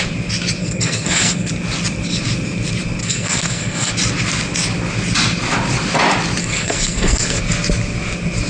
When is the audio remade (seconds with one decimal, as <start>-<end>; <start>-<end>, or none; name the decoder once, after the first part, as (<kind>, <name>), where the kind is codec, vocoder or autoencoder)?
0.6-1.5 (codec, SNAC); 3.0-3.9; 6.4-7.4

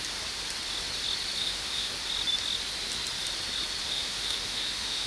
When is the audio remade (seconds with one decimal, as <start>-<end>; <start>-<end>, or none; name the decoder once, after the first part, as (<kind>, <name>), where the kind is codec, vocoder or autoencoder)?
1.4-1.9 (autoencoder, DAC-VAE); 3.8-5.1

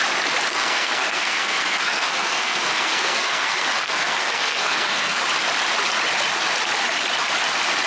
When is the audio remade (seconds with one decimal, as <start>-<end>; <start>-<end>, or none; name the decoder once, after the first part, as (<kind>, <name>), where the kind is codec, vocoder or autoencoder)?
0.5-5.2 (codec, SNAC)

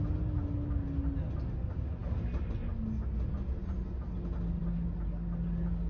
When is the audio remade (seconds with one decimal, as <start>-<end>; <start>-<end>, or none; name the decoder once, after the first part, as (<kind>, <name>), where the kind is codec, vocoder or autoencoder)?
none